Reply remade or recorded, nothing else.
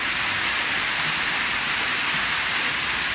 remade